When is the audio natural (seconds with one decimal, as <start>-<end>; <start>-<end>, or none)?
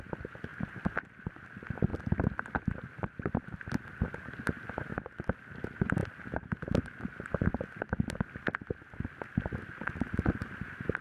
0.0-1.9; 4.5-11.0